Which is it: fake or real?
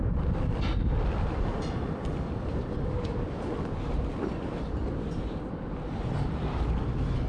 real